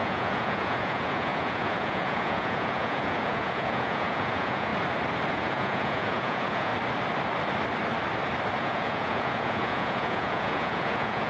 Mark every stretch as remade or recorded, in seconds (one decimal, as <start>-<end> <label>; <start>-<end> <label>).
0.0-4.7 remade; 4.7-5.3 recorded; 5.3-6.7 remade; 6.7-8.6 recorded; 8.6-11.3 remade